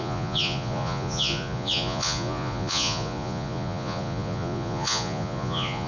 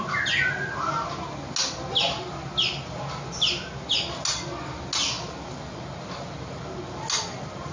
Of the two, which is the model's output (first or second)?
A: first